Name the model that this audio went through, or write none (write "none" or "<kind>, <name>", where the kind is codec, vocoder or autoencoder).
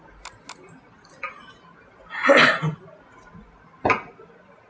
none